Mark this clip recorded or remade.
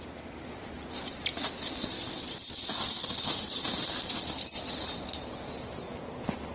recorded